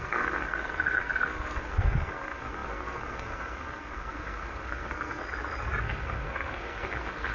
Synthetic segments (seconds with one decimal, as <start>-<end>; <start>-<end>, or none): 0.0-5.2; 5.8-7.3